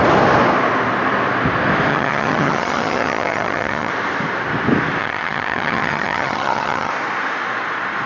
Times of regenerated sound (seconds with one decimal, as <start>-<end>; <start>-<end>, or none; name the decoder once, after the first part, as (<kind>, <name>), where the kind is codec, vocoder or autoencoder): 1.9-3.9 (vocoder, HiFi-GAN); 5.0-6.9